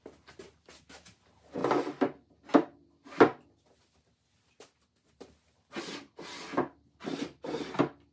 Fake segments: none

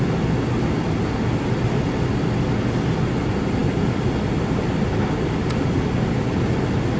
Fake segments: none

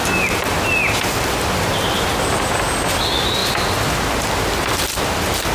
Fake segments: none

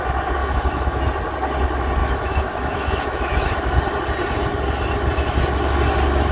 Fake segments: 0.4-1.0 (autoencoder, DAC-VAE); 2.0-3.8